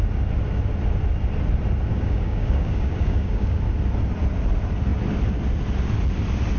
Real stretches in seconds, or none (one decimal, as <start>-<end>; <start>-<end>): 0.0-1.9; 3.6-6.6